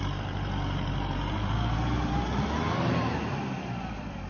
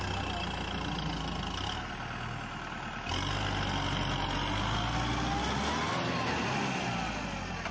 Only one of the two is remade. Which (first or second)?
first